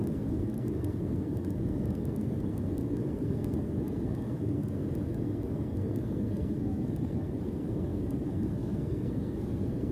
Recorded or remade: remade